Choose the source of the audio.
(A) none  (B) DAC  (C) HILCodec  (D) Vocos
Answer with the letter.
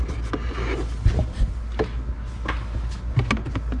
A